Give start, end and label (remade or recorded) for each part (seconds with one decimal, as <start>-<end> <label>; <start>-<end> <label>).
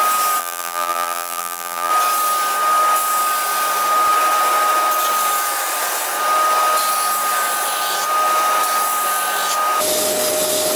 0.0-0.4 recorded; 0.4-1.9 remade; 1.9-10.8 recorded